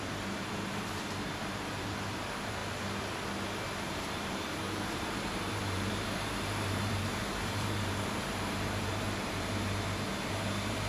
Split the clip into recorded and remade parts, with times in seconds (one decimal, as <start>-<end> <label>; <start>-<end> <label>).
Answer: 0.0-2.6 remade; 2.6-3.8 recorded; 3.8-10.9 remade